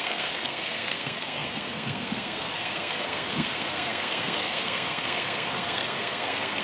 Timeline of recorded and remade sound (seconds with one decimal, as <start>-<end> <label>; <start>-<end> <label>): 0.0-6.6 remade